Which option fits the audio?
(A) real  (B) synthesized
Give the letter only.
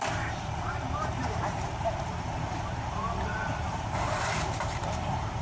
B